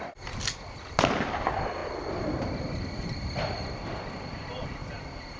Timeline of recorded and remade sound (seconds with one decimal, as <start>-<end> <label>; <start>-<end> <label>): 0.0-5.4 recorded